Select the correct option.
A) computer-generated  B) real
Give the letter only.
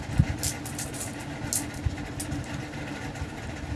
B